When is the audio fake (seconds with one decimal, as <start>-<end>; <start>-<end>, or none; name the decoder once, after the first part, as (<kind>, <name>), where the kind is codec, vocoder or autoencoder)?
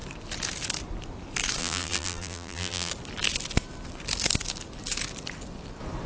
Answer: 1.6-2.9 (vocoder, BigVGAN v2)